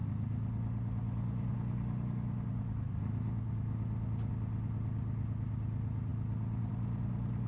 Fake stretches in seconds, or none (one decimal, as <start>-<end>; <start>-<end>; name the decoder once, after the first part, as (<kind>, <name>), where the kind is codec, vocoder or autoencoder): none